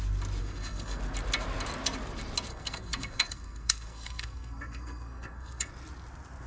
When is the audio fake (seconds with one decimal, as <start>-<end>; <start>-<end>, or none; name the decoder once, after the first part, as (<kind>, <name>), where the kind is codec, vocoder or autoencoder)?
0.4-1.0 (codec, SNAC); 2.5-5.7